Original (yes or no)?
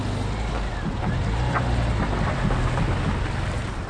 yes